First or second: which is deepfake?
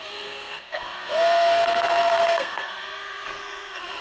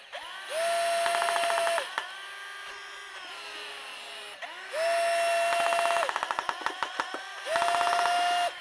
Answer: first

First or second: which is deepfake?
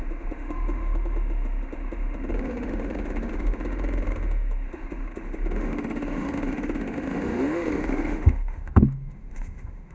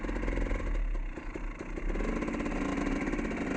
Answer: first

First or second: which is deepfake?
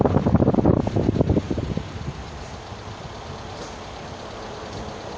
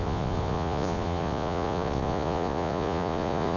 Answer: second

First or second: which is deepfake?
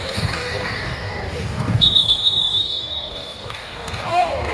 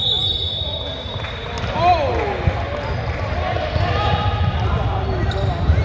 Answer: first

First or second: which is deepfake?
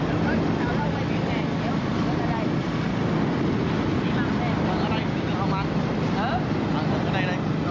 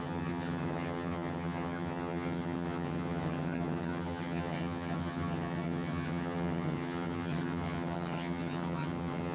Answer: second